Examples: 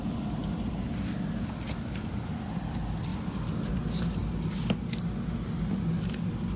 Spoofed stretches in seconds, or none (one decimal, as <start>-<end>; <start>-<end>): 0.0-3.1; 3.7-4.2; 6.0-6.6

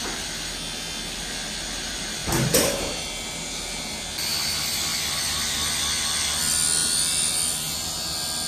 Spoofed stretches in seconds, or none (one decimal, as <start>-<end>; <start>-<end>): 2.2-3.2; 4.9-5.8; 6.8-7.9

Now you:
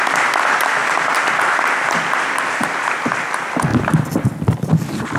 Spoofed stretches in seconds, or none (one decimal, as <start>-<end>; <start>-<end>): 3.7-4.3